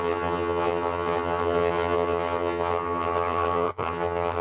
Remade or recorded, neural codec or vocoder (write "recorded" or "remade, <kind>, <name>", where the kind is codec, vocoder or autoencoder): remade, vocoder, HiFi-GAN